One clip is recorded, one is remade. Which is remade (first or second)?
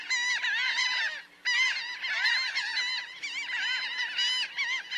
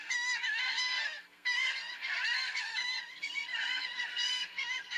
second